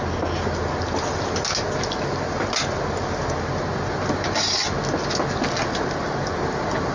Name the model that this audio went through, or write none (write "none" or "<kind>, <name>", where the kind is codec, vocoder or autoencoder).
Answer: none